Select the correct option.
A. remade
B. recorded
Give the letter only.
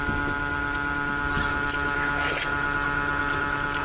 B